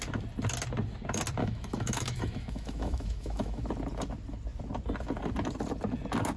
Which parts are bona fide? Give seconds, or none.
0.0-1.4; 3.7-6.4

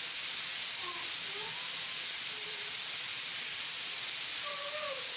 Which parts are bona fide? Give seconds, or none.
0.0-5.2

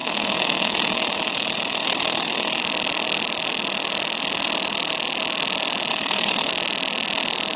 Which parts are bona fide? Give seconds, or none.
2.6-5.9; 6.5-7.6

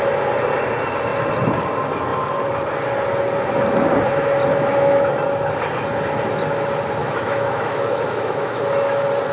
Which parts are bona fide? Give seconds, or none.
0.0-4.5; 5.1-7.0; 8.6-9.3